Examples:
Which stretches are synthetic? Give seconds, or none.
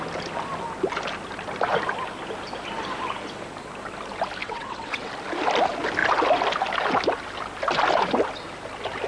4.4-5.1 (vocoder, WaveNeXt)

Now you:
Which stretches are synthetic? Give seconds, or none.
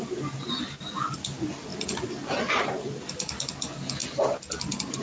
none